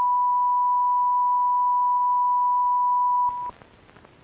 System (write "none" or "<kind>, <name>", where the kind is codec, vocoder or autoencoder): none